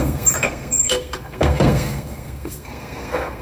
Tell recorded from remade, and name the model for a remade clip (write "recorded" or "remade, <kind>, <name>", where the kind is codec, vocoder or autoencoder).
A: remade, codec, SNAC